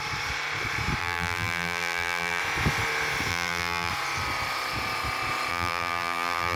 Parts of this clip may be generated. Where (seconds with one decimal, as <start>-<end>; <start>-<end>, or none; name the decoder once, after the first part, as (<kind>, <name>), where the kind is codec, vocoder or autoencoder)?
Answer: 1.0-2.4 (vocoder, BigVGAN v2); 3.3-3.9; 5.5-6.6